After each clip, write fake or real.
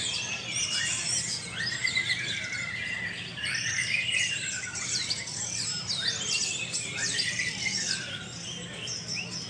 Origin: fake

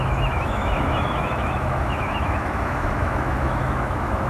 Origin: fake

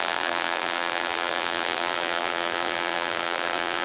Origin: fake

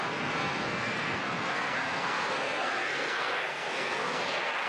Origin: fake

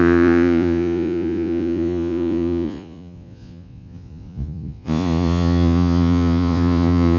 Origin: fake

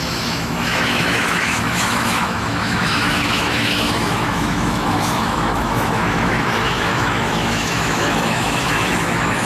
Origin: fake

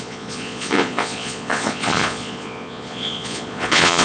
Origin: fake